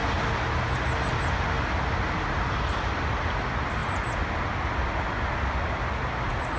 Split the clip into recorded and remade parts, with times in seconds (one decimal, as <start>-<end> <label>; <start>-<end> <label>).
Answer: 0.0-6.6 recorded